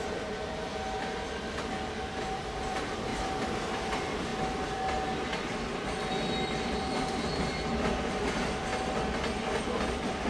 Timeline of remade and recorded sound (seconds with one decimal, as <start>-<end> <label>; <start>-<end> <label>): 0.0-3.1 remade; 3.1-3.7 recorded; 3.7-8.7 remade; 8.7-9.4 recorded; 9.4-10.3 remade